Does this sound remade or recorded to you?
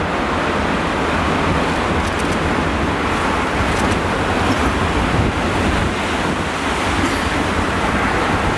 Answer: recorded